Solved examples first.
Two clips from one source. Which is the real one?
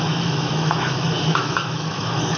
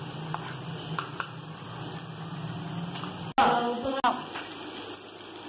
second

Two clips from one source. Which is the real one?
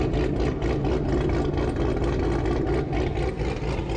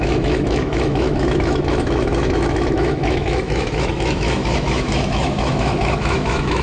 first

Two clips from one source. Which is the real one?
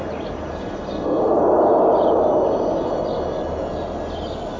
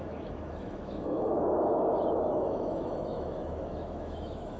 first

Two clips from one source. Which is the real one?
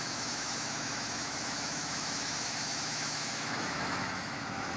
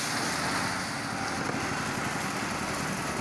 second